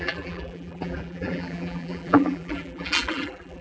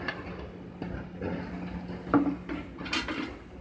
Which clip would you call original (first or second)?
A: second